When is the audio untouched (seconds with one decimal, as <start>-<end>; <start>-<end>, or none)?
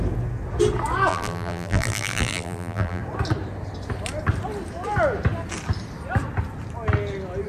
0.0-1.1; 3.0-7.5